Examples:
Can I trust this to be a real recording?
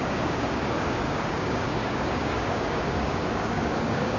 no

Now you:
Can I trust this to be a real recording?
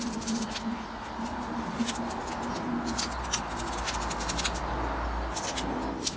yes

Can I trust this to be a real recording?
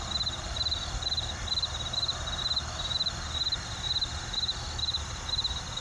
yes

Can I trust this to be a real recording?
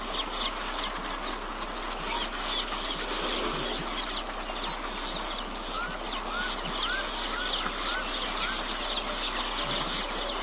yes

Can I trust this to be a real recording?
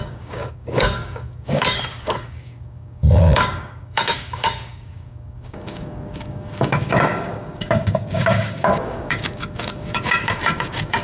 no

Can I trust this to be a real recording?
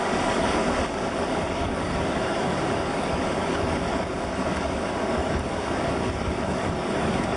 no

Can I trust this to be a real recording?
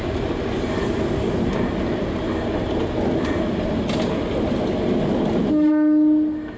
yes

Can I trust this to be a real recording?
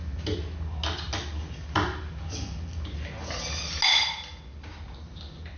yes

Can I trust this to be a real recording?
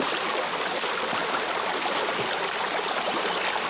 yes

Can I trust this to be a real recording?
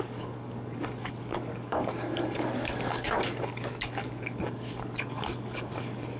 no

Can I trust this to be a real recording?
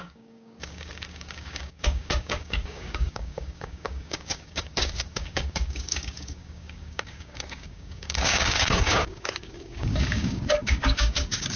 no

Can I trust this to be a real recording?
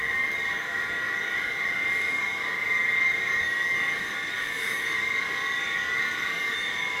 no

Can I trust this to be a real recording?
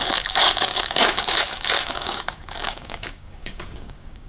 no